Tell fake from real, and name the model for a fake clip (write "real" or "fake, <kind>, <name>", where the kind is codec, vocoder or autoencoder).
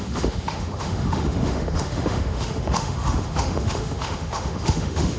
fake, autoencoder, DAC-VAE